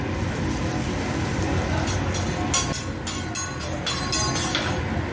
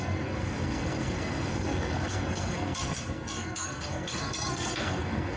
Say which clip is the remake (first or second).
second